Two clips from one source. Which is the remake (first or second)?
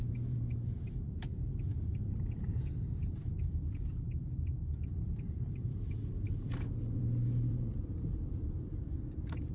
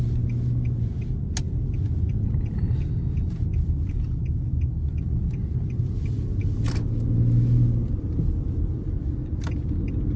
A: first